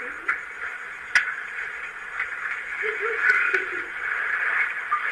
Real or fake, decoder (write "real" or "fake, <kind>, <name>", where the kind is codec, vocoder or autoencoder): real